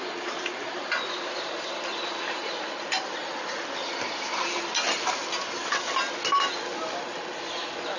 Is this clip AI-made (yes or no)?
no